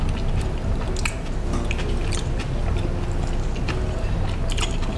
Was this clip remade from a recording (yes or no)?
no